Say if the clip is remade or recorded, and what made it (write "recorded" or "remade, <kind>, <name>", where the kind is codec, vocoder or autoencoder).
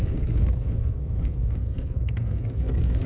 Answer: remade, codec, SNAC